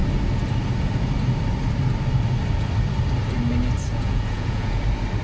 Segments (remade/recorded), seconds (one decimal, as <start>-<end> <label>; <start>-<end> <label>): 0.0-3.9 recorded; 3.9-4.8 remade; 4.8-5.2 recorded